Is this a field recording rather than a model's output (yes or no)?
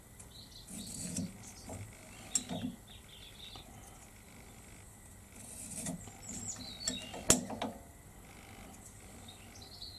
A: yes